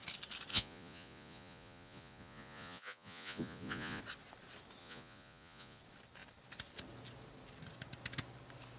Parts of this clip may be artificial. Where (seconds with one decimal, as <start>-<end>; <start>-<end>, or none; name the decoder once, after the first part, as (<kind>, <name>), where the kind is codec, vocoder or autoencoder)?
0.5-4.0 (vocoder, Vocos); 4.8-5.8